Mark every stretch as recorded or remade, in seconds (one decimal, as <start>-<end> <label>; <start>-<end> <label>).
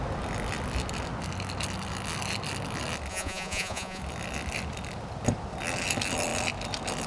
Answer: 0.0-3.1 recorded; 3.1-4.0 remade; 4.0-7.1 recorded